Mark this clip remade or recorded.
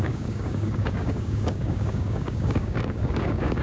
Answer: remade